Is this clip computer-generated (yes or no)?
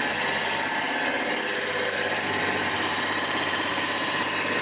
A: no